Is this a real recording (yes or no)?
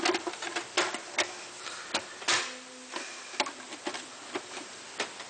yes